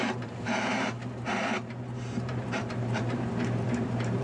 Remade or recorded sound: remade